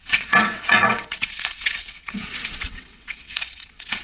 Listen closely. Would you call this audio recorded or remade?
remade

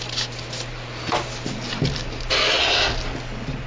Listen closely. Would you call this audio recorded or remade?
recorded